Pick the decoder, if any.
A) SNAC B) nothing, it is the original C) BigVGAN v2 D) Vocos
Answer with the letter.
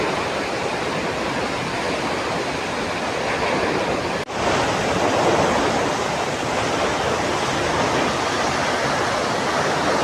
B